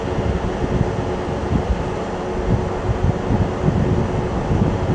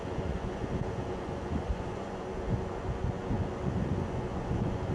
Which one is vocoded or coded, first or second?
second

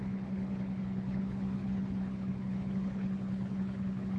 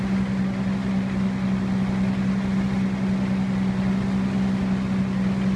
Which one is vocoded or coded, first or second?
first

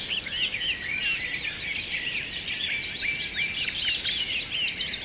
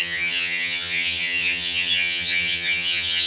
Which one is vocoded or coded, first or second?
second